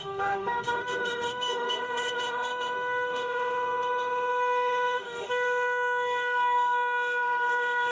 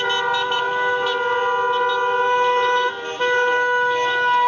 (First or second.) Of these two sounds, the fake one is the first